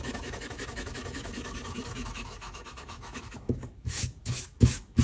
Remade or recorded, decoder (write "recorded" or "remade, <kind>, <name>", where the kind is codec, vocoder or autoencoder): remade, autoencoder, DAC-VAE